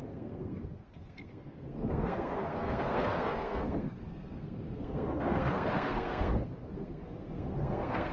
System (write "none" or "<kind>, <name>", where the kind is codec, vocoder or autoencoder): codec, SNAC